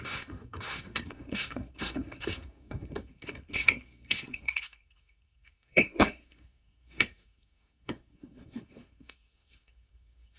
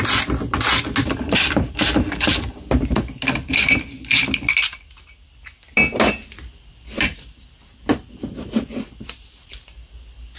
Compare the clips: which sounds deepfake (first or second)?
first